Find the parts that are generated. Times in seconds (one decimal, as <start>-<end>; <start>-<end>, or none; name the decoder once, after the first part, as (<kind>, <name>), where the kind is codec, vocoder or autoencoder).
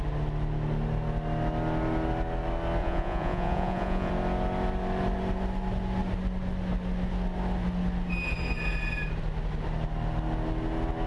2.8-4.1 (vocoder, Vocos)